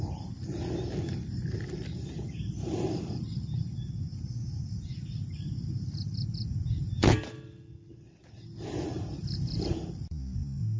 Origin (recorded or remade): remade